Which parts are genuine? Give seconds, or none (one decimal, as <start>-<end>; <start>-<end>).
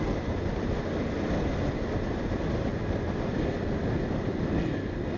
0.0-5.2